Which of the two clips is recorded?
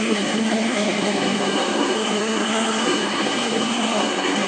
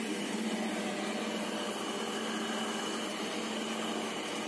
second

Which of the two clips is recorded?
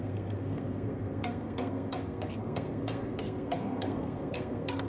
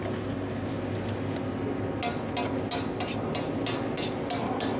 second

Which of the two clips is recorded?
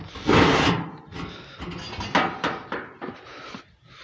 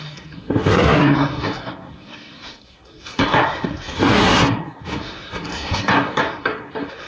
first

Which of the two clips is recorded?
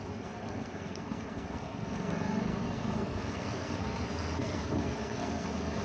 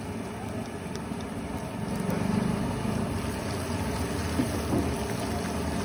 second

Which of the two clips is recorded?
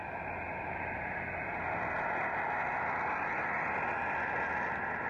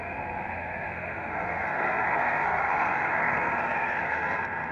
first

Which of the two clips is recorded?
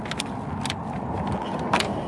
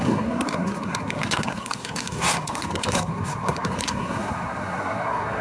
first